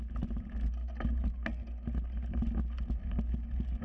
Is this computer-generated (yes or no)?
no